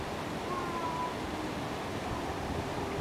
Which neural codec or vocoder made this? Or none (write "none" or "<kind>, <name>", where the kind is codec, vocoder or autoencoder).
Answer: none